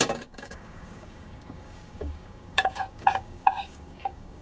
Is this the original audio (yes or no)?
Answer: no